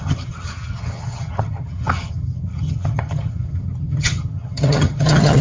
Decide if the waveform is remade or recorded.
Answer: remade